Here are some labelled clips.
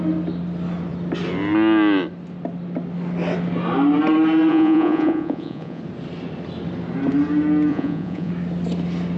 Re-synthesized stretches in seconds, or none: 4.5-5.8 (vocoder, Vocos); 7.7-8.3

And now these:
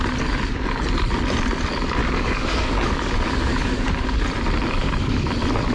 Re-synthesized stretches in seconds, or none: 2.0-4.2 (codec, DAC); 4.8-5.3

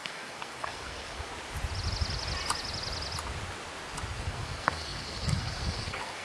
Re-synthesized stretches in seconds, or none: 0.0-1.3 (codec, SNAC); 4.2-6.2